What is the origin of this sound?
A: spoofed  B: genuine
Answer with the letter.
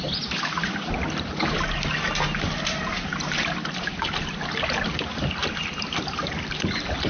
B